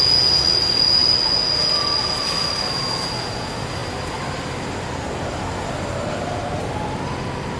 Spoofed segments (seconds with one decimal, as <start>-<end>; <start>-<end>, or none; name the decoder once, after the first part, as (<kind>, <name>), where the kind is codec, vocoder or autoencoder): none